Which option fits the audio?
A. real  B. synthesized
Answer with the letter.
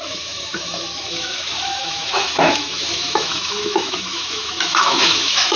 B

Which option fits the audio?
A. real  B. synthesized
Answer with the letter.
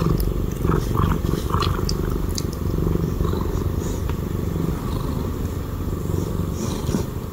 A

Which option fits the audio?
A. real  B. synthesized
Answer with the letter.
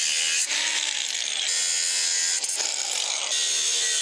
A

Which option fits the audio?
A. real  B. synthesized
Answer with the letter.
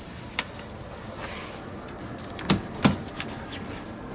A